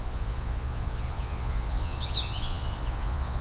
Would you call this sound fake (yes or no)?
yes